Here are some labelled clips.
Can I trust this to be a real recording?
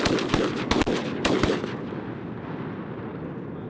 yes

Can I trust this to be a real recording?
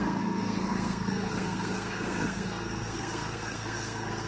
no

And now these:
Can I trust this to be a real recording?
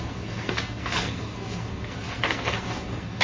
no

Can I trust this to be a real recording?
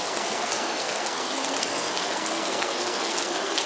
no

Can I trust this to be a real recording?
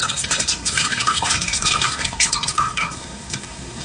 no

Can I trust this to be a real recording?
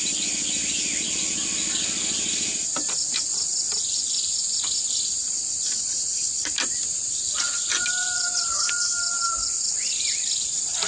yes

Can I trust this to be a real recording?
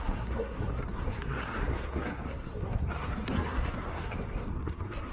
no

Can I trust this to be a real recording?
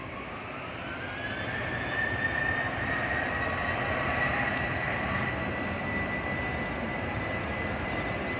yes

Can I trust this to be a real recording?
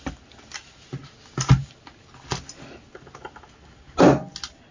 yes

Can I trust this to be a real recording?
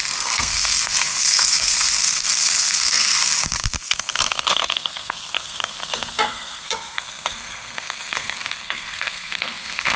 no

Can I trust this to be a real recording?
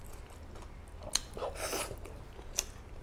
yes